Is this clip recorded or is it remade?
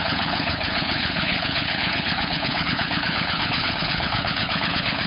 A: remade